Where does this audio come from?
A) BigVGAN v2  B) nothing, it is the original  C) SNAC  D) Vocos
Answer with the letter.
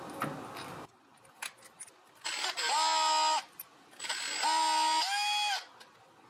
B